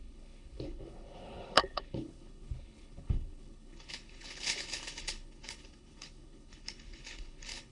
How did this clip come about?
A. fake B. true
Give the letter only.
A